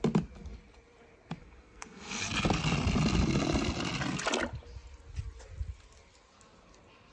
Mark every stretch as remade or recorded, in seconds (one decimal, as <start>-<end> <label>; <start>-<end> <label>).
0.0-1.4 recorded; 1.4-2.2 remade; 2.2-7.1 recorded